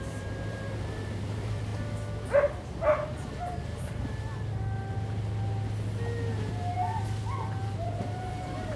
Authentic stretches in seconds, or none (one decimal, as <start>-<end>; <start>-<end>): 1.7-6.5; 7.0-7.6

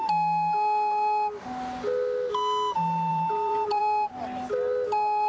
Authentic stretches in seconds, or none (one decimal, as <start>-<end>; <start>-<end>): 0.0-3.1; 3.8-5.3

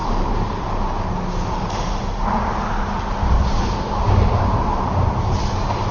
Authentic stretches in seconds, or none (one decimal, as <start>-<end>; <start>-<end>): 0.5-3.2; 5.1-5.9